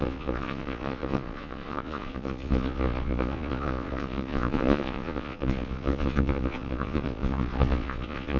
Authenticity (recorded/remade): remade